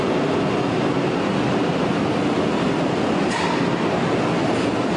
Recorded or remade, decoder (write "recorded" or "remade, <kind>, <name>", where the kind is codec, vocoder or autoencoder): recorded